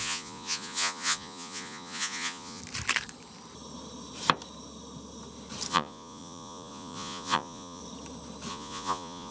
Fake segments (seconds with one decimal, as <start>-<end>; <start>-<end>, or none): 0.0-2.6; 5.7-7.8; 8.5-9.3